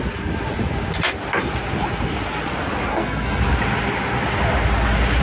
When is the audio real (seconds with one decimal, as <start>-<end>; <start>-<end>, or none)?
0.0-2.9; 3.4-5.2